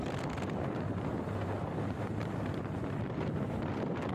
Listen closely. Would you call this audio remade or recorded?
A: remade